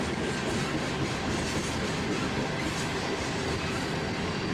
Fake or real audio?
real